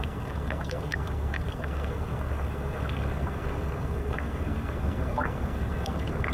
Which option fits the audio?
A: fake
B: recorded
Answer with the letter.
A